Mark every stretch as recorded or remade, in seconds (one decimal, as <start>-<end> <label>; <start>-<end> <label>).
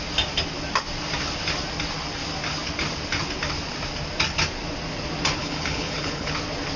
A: 0.0-5.4 recorded; 5.4-6.3 remade; 6.3-6.8 recorded